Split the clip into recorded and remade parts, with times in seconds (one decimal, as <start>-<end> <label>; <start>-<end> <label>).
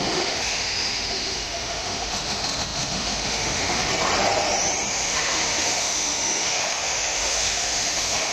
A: 0.0-3.9 remade; 3.9-4.9 recorded; 4.9-8.3 remade